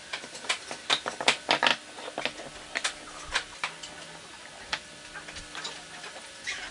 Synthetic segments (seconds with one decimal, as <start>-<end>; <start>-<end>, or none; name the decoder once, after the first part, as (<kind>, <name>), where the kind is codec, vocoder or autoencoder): none